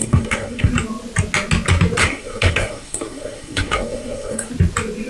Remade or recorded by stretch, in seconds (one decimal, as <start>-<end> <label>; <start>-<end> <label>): 0.0-0.7 remade; 0.7-2.0 recorded; 2.0-4.5 remade; 4.5-5.1 recorded